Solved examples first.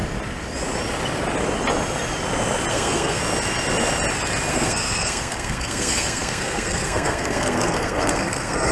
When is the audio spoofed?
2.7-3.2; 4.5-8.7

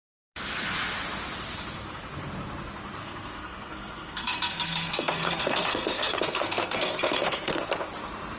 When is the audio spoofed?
3.0-7.7